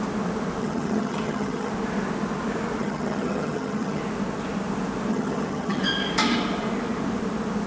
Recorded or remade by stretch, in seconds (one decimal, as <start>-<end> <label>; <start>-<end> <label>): 0.0-0.6 recorded; 0.6-1.7 remade; 1.7-2.8 recorded; 2.8-4.0 remade; 4.0-5.1 recorded; 5.1-5.8 remade; 5.8-7.7 recorded